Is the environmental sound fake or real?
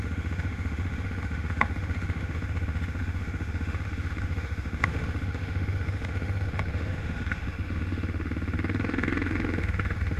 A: fake